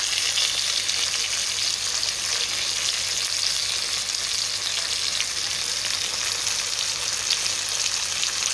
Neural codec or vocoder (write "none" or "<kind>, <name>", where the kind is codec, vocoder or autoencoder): none